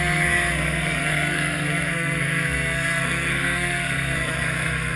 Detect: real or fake fake